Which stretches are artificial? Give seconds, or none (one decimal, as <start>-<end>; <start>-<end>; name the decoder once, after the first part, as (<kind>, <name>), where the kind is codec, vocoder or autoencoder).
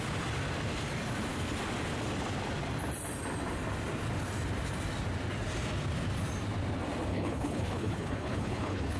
7.1-9.0 (codec, HILCodec)